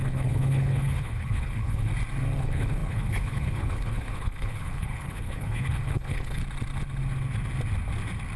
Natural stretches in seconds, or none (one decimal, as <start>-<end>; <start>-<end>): 1.9-2.4; 6.4-8.4